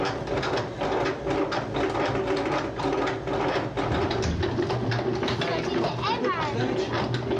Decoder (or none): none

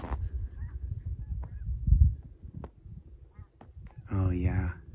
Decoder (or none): none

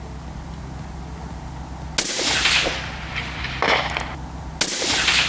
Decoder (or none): none